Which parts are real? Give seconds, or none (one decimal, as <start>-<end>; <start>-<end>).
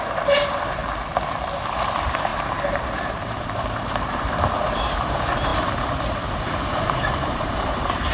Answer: 0.8-1.7